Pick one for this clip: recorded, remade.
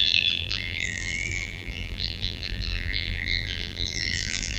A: remade